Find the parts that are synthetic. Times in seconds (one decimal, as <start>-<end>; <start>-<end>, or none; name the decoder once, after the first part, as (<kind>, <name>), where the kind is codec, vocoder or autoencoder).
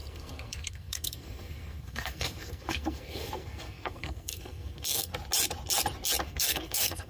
0.0-5.1 (codec, SNAC); 6.2-7.1